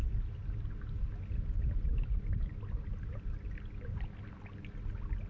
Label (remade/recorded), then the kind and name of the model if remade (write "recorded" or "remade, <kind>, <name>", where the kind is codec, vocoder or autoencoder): recorded